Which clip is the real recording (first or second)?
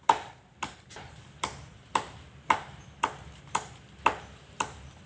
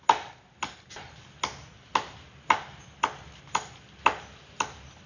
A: second